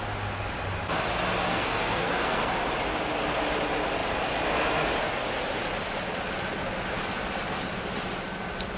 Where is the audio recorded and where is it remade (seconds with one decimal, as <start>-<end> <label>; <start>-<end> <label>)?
0.0-1.5 recorded; 1.5-2.5 remade; 2.5-8.8 recorded